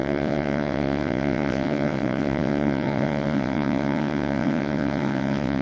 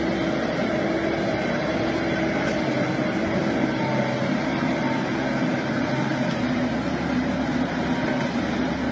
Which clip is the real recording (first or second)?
second